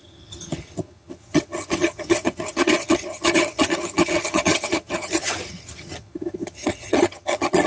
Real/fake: fake